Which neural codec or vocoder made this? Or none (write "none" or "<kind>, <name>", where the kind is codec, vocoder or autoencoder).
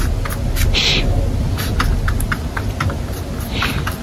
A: none